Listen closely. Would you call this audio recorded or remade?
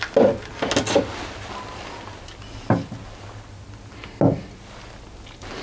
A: recorded